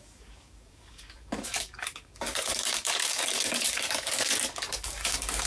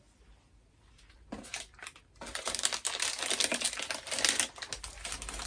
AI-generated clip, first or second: first